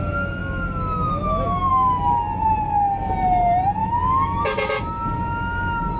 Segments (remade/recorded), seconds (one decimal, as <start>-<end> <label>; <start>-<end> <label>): 0.0-3.8 recorded; 3.8-4.4 remade; 4.4-6.0 recorded